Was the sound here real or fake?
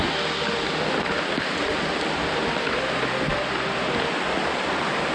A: real